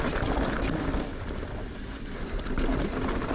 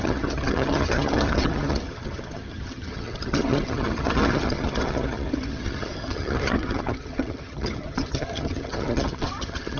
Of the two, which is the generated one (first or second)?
second